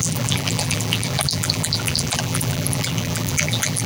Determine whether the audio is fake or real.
fake